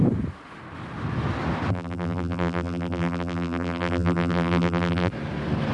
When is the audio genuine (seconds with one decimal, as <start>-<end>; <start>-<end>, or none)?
0.0-1.7; 5.1-5.7